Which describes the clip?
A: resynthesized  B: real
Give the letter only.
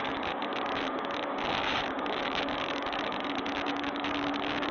A